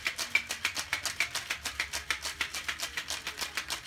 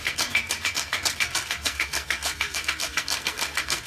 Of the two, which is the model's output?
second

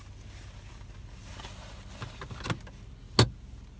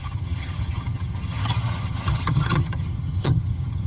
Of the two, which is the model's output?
second